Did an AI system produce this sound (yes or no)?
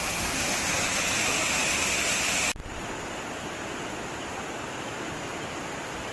no